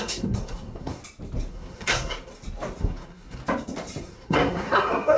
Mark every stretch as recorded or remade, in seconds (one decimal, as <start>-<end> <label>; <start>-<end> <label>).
0.0-1.0 remade; 1.0-1.5 recorded; 1.5-2.3 remade; 2.3-2.8 recorded; 2.8-3.4 remade; 3.4-4.0 recorded; 4.0-5.2 remade